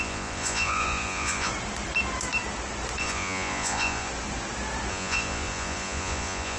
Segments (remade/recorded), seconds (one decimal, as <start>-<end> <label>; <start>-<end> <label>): 0.0-1.5 remade; 1.5-3.0 recorded; 3.0-4.1 remade; 4.1-4.9 recorded; 4.9-6.6 remade